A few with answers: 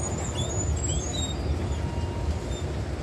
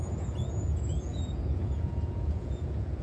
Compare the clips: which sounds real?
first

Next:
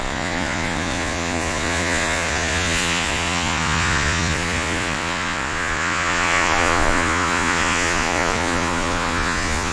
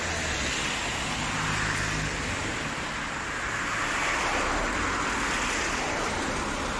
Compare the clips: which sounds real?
second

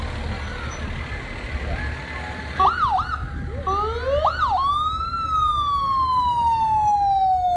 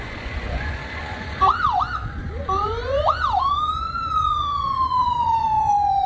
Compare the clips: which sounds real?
first